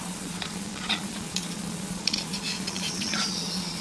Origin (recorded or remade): remade